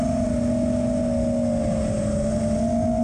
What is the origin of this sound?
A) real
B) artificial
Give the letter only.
A